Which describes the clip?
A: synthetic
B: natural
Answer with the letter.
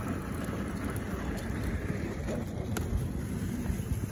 B